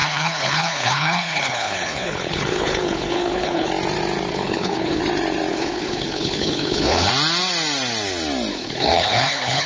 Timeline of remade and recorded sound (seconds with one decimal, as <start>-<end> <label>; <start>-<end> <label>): 0.0-3.7 remade; 3.7-4.3 recorded; 4.3-5.0 remade; 5.0-5.5 recorded; 5.5-7.1 remade; 7.1-8.5 recorded; 8.5-9.7 remade